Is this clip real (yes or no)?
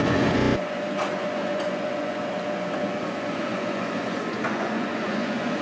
no